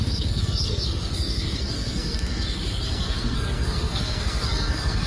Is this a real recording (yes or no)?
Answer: no